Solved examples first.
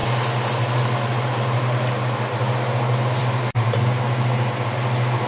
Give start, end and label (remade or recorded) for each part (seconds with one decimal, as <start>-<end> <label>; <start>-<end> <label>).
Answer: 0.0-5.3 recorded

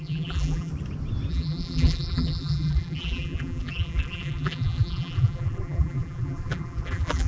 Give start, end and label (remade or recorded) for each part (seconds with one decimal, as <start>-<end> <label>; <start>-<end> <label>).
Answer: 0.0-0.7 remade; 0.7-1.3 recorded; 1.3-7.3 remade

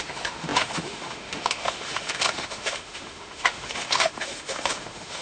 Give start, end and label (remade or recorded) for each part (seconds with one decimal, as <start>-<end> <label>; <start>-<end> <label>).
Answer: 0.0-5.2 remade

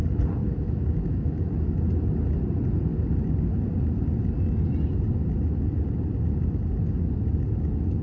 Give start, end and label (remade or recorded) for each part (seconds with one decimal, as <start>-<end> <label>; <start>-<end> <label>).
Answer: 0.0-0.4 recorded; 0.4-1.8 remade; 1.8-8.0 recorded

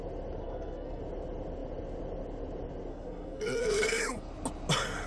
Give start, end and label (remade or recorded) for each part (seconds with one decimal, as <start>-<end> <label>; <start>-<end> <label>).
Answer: 0.0-0.4 recorded; 0.4-1.0 remade; 1.0-2.9 recorded; 2.9-4.3 remade; 4.3-5.1 recorded

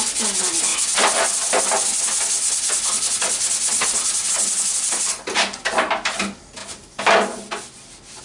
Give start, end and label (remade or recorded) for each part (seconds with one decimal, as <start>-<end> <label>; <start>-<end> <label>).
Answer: 0.0-8.2 recorded

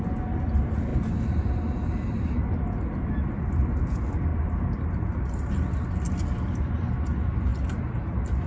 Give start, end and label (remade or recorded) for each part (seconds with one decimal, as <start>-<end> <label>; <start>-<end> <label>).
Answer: 0.0-4.3 recorded; 4.3-5.5 remade; 5.5-8.5 recorded

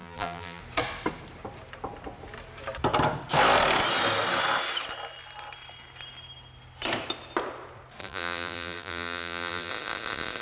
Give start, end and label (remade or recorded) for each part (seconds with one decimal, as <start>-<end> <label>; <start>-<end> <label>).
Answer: 0.0-0.6 remade; 0.6-8.0 recorded; 8.0-9.7 remade; 9.7-10.4 recorded